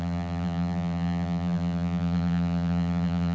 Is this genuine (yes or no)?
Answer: no